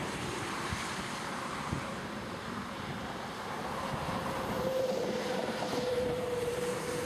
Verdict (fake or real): fake